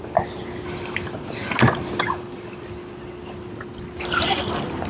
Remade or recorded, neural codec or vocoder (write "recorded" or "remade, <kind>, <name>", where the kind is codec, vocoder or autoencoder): recorded